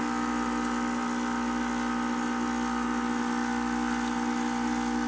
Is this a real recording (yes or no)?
yes